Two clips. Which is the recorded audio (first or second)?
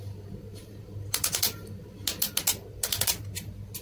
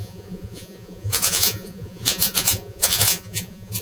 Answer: first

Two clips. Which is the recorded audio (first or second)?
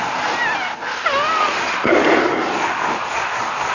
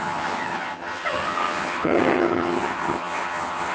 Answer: first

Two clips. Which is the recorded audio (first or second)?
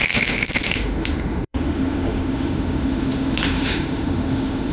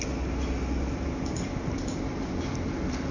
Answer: second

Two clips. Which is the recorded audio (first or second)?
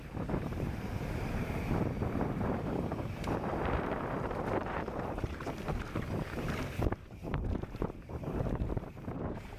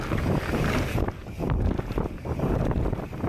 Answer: second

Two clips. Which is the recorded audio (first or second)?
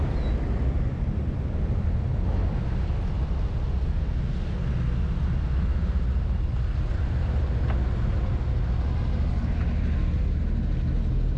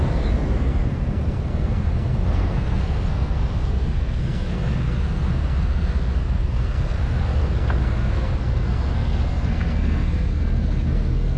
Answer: first